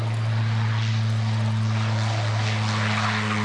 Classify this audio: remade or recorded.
recorded